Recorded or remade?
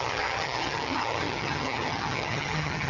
remade